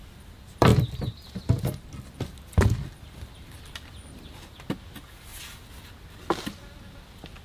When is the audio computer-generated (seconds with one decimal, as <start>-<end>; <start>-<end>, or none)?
none